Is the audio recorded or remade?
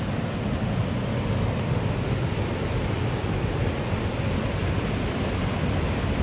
recorded